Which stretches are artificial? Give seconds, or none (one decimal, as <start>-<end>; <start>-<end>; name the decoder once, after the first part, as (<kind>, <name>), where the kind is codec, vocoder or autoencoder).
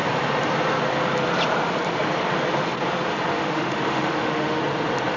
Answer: 3.3-4.6 (autoencoder, DAC-VAE)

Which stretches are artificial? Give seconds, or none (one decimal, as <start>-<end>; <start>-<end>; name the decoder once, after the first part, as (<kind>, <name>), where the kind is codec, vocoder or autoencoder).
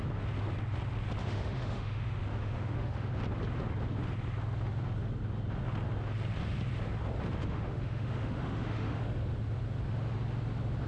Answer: 1.2-3.1 (autoencoder, DAC-VAE); 7.4-9.0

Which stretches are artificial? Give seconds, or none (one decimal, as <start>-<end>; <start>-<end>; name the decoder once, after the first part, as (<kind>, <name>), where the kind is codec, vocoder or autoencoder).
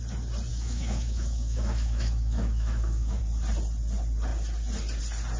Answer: 0.5-3.2 (autoencoder, DAC-VAE)